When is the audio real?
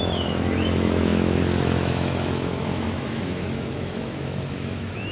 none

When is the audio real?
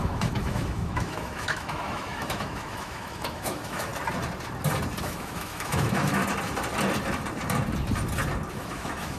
3.9-5.0; 6.2-8.5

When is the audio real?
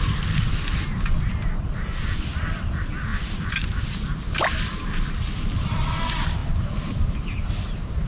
0.0-8.1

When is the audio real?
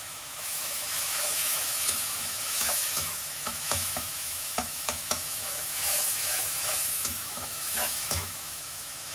none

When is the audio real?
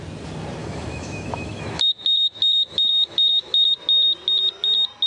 0.0-0.6; 3.7-5.1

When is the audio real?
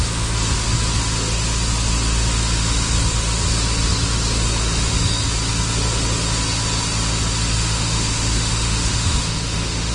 0.0-7.6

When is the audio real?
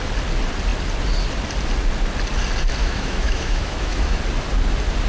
0.0-2.8; 4.2-5.1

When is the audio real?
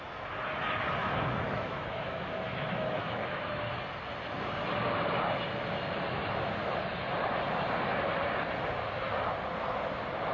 0.0-1.0; 3.6-10.3